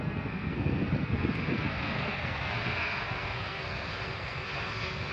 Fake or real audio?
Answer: fake